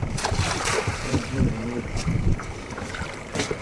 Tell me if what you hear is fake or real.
fake